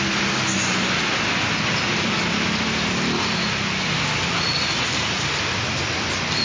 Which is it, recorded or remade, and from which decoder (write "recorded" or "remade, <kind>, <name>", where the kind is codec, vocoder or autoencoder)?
recorded